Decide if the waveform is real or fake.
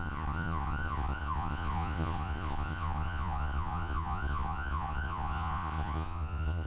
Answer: fake